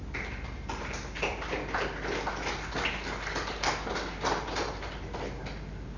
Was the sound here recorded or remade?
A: recorded